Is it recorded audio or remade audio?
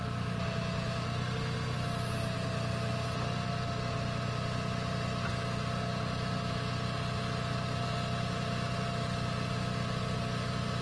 recorded